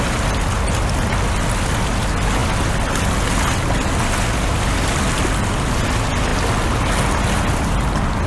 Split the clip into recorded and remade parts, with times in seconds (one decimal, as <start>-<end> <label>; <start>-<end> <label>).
0.0-8.3 recorded